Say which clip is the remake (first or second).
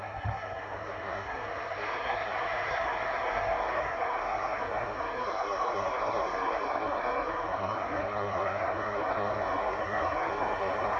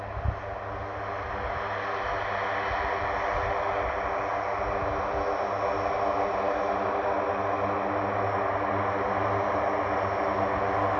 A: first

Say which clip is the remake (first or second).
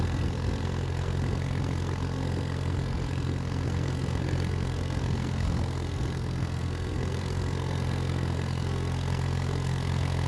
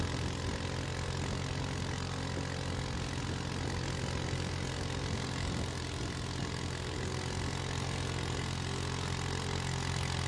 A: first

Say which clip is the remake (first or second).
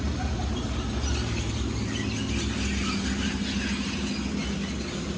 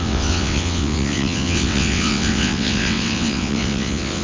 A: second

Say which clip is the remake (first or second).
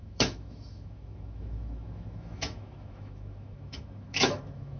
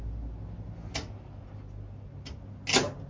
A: first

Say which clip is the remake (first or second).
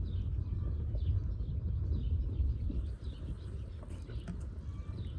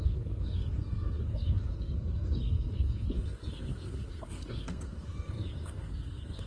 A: second